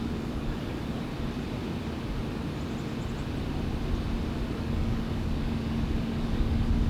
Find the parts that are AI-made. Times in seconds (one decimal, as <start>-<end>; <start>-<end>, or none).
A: 0.0-1.1; 4.6-6.9